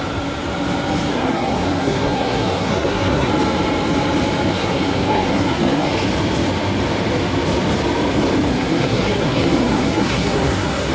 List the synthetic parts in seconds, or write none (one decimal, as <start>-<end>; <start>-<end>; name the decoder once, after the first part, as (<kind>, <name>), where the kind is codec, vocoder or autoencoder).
1.1-3.3 (codec, SNAC); 4.5-5.9; 8.5-10.9